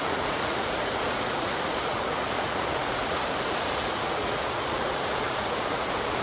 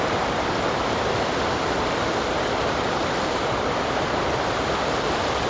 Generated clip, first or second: first